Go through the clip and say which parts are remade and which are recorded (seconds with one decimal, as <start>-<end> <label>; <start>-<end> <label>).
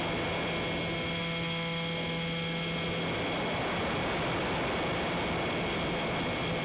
0.0-6.6 recorded